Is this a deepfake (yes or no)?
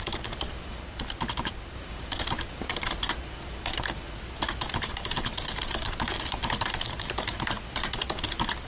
yes